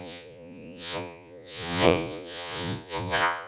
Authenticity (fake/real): fake